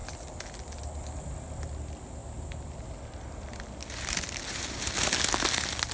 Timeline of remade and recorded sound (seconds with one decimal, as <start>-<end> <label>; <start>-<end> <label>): 0.0-5.9 recorded